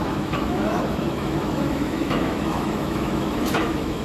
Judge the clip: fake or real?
fake